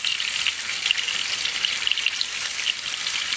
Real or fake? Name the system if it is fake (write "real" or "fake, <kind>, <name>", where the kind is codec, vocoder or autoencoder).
fake, vocoder, BigVGAN v2